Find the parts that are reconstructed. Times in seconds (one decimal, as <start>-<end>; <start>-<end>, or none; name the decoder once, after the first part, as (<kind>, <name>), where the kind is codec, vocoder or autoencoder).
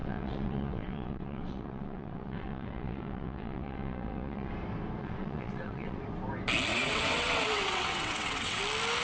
0.0-4.5 (vocoder, WaveNeXt); 5.0-6.0; 6.7-8.6